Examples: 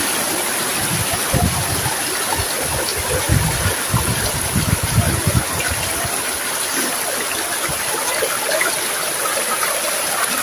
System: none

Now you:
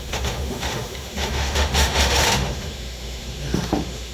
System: autoencoder, DAC-VAE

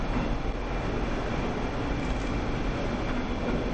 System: none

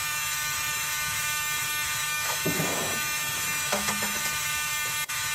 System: autoencoder, DAC-VAE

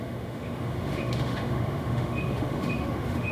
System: autoencoder, DAC-VAE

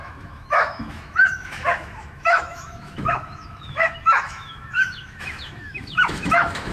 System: autoencoder, DAC-VAE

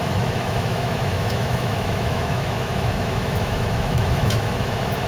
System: autoencoder, DAC-VAE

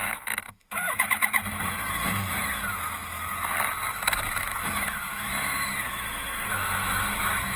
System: autoencoder, DAC-VAE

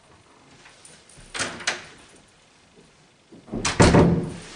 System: none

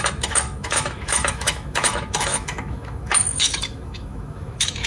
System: autoencoder, DAC-VAE